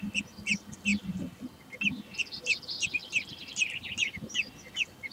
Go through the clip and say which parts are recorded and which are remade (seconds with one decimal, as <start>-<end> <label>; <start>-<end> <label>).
0.0-5.1 recorded